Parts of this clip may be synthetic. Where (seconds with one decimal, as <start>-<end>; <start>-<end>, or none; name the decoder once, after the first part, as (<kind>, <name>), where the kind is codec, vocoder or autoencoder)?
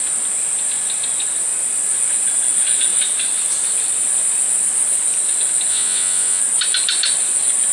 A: 5.7-6.4 (vocoder, Vocos)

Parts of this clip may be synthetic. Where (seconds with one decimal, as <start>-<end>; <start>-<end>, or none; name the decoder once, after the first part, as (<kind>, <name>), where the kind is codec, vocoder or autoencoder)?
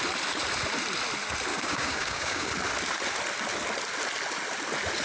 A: 1.5-2.5 (codec, DAC)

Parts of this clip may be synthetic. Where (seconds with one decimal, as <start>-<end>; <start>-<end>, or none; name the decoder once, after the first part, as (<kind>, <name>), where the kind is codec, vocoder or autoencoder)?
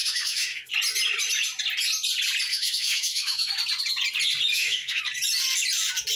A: 0.0-0.7 (autoencoder, DAC-VAE); 2.5-3.5; 4.5-5.0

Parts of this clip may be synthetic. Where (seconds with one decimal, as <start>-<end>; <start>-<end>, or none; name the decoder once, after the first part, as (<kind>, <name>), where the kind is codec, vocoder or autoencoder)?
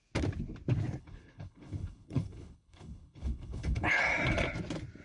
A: 1.0-4.0 (codec, HILCodec)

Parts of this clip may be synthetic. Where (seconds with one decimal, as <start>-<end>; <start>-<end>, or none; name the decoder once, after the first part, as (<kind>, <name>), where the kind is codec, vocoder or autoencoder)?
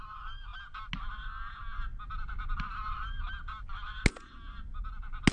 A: none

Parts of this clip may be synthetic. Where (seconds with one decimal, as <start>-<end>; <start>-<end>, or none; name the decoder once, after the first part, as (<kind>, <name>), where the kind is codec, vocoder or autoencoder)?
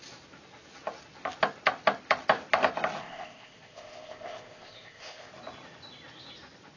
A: 3.0-5.3 (codec, ZipCodec)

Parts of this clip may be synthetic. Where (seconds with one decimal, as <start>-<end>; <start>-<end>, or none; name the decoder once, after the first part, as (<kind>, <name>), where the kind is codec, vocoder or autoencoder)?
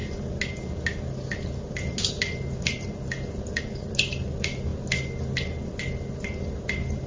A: none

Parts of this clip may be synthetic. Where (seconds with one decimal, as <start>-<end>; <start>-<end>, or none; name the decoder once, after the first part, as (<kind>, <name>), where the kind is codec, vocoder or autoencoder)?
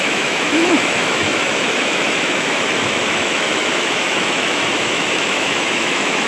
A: 0.0-6.3 (autoencoder, DAC-VAE)